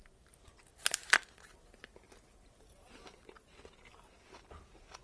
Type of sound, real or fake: real